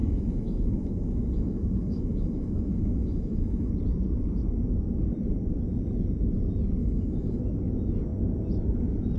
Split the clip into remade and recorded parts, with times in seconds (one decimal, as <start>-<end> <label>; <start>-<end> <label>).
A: 0.0-3.7 remade; 3.7-6.8 recorded; 6.8-7.4 remade; 7.4-9.2 recorded